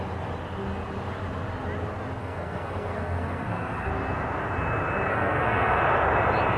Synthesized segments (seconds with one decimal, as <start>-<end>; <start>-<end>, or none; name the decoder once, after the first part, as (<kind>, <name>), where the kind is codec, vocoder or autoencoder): 2.2-3.9 (codec, SNAC); 5.1-5.8